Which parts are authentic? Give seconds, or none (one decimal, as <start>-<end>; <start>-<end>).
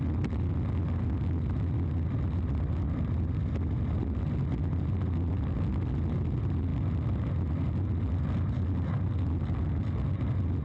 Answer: 0.0-10.6